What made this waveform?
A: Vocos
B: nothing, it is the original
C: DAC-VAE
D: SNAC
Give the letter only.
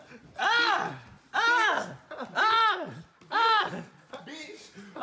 B